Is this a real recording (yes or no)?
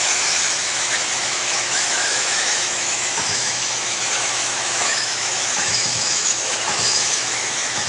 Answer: no